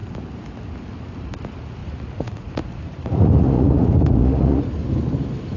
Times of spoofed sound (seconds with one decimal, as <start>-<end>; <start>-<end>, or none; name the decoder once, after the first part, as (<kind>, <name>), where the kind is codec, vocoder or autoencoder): 1.8-4.6 (vocoder, Vocos)